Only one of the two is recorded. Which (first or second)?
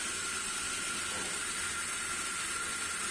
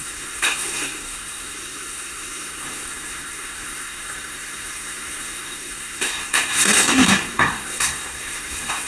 first